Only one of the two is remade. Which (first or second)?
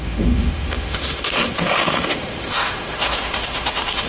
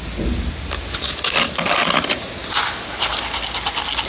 first